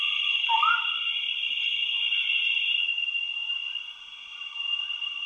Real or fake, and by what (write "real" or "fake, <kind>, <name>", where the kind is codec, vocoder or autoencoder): real